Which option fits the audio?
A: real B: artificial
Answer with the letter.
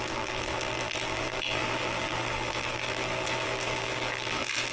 B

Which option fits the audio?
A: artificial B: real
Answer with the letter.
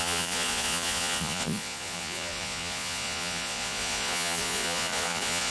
A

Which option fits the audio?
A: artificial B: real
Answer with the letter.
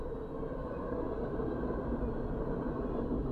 B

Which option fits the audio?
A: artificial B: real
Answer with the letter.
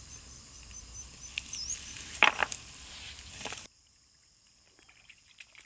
A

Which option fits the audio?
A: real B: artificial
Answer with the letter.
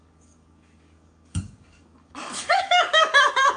B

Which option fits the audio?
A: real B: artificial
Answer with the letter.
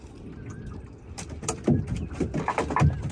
A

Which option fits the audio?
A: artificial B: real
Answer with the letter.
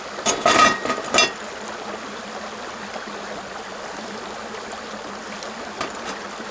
B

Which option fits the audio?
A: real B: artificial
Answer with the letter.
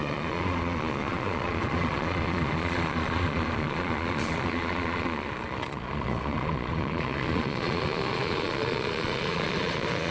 B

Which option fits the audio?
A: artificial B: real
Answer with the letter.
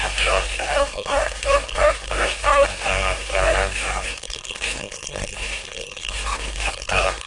A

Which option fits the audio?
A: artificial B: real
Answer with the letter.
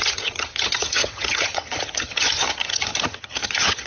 A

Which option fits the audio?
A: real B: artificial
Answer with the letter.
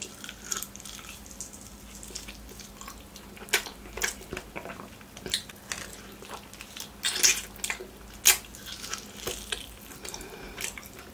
A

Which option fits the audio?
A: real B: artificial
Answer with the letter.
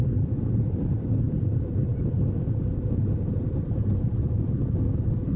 A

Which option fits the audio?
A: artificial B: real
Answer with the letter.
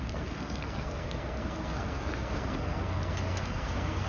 A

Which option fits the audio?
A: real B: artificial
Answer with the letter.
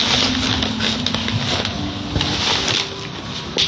A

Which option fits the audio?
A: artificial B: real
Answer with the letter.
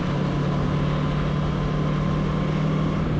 B